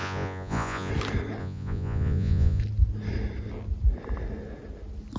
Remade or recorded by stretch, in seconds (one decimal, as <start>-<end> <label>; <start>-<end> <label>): 0.0-0.9 remade; 0.9-1.4 recorded; 1.4-2.6 remade; 2.6-5.2 recorded